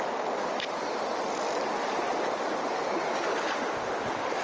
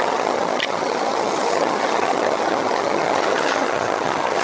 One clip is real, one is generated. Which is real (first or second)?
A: first